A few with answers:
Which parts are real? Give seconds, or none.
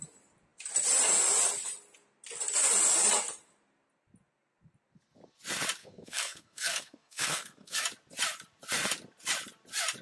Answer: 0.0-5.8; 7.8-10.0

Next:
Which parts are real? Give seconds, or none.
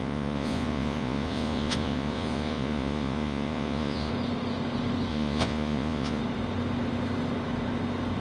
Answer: 4.1-5.1; 6.2-8.2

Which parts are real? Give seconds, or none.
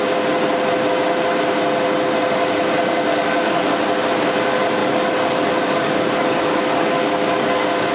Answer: 0.0-3.1; 3.7-4.8